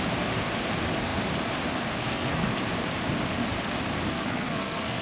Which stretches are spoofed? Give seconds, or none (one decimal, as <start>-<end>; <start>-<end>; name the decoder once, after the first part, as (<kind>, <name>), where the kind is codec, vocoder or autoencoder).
2.0-2.5 (codec, SNAC); 4.1-5.0